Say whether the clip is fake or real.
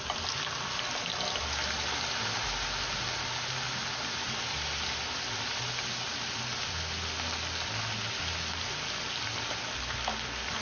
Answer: real